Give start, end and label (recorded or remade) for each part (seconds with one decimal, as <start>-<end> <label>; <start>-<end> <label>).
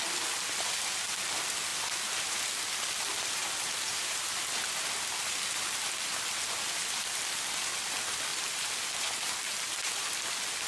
0.0-10.7 recorded